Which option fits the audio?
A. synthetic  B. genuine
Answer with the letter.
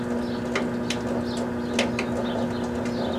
B